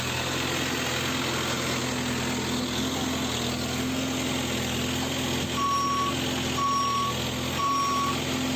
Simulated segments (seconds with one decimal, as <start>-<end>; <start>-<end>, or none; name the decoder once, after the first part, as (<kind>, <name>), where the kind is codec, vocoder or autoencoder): none